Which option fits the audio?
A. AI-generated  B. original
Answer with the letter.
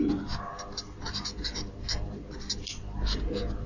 B